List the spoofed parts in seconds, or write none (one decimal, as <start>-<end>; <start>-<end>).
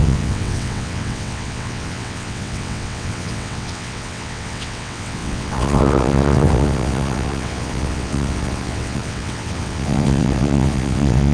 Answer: 0.0-11.3